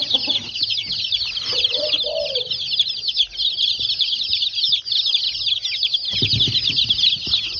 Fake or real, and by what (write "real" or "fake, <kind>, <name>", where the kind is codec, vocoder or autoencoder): real